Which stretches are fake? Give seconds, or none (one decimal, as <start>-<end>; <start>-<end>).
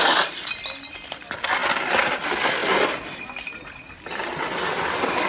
none